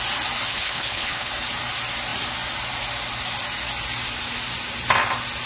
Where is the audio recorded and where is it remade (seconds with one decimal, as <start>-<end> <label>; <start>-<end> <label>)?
0.0-0.5 recorded; 0.5-1.3 remade; 1.3-5.5 recorded